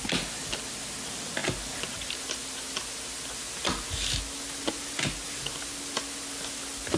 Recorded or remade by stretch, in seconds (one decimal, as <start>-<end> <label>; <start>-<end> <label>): 0.0-7.0 recorded

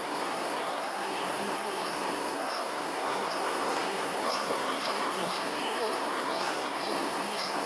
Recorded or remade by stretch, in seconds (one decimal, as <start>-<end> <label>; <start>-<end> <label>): 0.0-7.7 remade

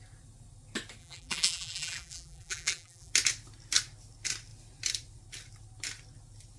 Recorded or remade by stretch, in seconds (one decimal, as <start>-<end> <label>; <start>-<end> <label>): 0.0-1.0 recorded; 1.0-3.1 remade; 3.1-6.6 recorded

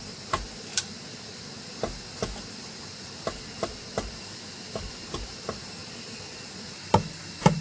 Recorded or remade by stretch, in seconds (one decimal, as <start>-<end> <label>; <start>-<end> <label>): 0.0-7.6 recorded

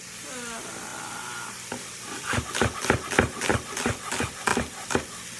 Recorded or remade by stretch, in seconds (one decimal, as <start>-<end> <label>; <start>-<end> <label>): 0.0-0.9 recorded; 0.9-2.5 remade; 2.5-4.5 recorded; 4.5-5.0 remade; 5.0-5.4 recorded

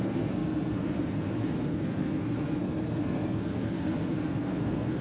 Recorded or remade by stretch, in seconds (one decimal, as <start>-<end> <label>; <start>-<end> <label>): 0.0-5.0 remade

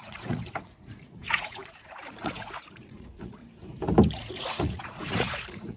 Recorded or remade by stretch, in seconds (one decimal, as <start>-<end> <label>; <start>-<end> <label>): 0.0-3.4 remade; 3.4-4.1 recorded; 4.1-5.8 remade

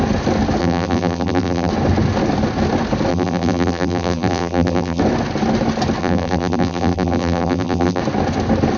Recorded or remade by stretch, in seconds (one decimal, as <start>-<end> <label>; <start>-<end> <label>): 0.0-0.6 recorded; 0.6-1.7 remade; 1.7-3.1 recorded; 3.1-5.0 remade; 5.0-6.0 recorded; 6.0-8.0 remade; 8.0-8.8 recorded